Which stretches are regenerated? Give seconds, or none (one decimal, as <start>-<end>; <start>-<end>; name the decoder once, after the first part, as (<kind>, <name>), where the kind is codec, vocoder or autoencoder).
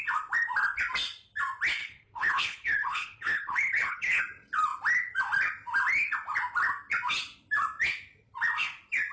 1.8-4.2 (codec, HILCodec)